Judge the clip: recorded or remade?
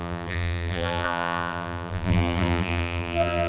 remade